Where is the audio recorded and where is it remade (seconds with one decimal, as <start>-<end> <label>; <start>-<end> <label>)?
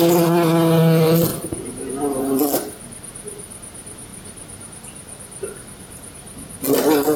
0.0-7.2 recorded